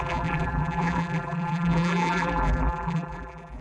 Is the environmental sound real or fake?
fake